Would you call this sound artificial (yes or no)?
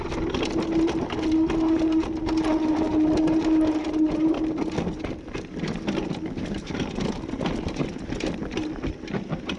no